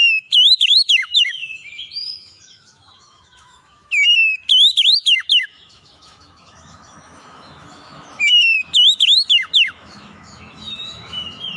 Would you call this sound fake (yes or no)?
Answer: yes